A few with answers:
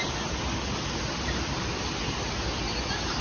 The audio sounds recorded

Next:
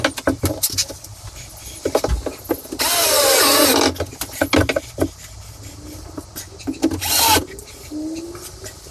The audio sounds recorded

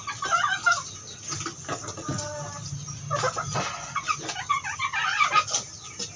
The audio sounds recorded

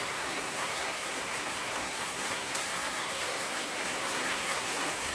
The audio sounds remade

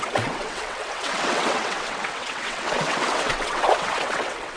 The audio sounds remade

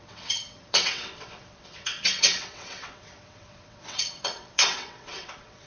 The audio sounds remade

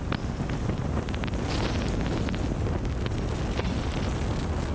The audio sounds recorded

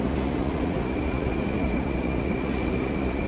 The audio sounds remade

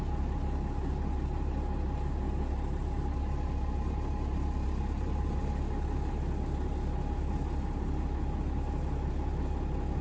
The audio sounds recorded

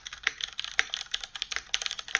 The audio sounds recorded